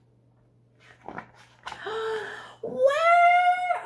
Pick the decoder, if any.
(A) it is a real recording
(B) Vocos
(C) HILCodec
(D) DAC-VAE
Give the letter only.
A